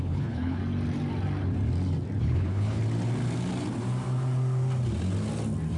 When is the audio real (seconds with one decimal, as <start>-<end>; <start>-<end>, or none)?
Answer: 0.6-2.2; 2.8-5.8